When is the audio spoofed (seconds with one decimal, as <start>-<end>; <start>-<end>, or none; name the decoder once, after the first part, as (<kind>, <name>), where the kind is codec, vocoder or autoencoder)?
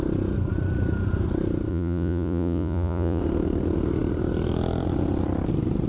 1.7-3.2 (vocoder, Vocos)